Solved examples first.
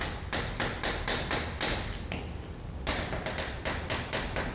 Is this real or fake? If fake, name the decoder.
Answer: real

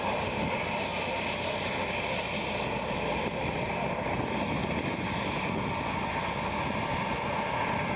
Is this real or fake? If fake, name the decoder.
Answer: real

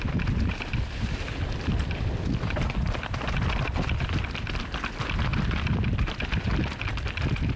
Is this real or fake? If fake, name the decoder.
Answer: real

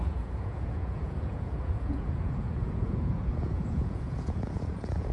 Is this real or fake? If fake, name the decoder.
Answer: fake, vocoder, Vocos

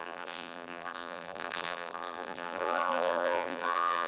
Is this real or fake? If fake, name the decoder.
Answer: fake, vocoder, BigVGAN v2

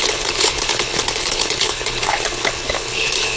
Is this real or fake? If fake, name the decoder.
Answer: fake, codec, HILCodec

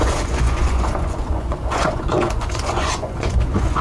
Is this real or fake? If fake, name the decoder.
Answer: fake, vocoder, Vocos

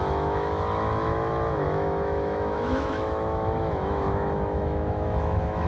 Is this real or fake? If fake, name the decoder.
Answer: fake, autoencoder, DAC-VAE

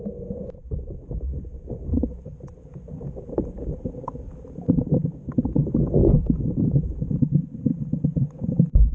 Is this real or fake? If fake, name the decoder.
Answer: real